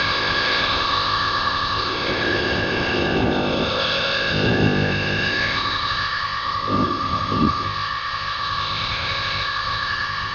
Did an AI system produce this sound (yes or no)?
yes